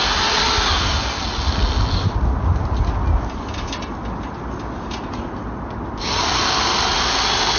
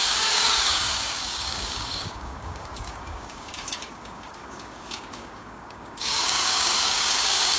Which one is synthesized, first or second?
second